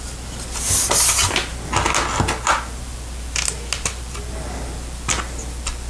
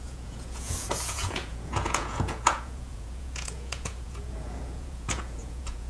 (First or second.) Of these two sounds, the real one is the first